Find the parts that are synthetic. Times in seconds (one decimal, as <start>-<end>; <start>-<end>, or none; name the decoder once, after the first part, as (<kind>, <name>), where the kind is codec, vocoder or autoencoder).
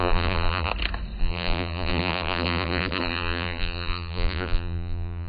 0.0-0.7 (vocoder, BigVGAN v2); 1.2-5.3